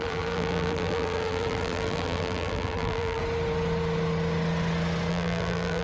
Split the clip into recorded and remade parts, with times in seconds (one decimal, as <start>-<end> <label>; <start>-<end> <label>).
0.0-3.2 remade; 3.2-5.1 recorded; 5.1-5.8 remade